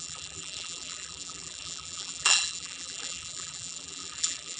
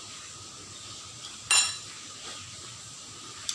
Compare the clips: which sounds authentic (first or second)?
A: second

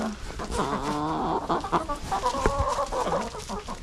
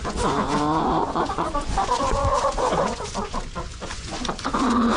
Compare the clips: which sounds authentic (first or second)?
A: first